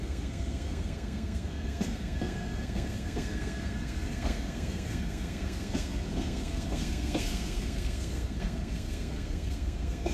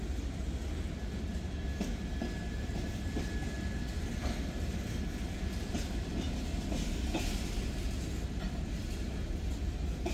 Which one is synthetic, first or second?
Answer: first